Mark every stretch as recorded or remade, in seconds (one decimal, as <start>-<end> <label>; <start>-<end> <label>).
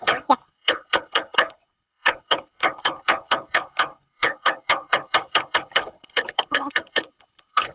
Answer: 0.0-7.7 remade